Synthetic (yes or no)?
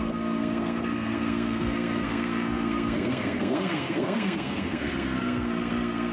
yes